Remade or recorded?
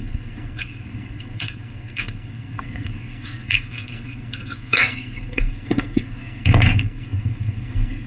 remade